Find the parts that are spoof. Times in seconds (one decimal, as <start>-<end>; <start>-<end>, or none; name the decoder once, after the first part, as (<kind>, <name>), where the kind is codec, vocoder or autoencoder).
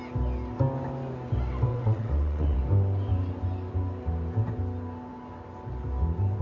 1.7-2.6 (vocoder, WaveNeXt)